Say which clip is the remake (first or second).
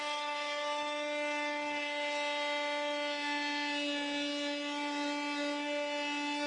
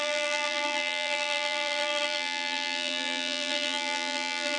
second